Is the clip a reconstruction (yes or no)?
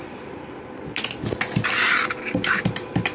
no